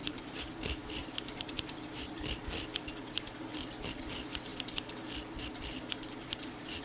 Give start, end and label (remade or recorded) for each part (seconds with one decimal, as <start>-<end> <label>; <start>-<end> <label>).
0.0-0.5 remade; 0.5-1.0 recorded; 1.0-2.1 remade; 2.1-6.8 recorded